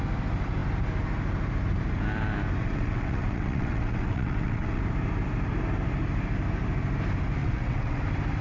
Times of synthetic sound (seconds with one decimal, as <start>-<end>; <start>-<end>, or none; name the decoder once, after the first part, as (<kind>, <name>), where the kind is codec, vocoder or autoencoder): 2.6-4.8 (vocoder, WaveNeXt); 7.4-8.0